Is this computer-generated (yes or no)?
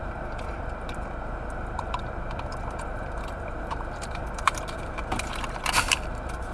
yes